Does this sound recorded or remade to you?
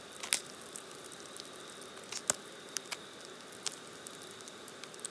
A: recorded